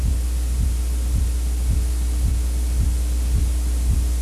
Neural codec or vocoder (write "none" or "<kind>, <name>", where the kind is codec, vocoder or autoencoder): none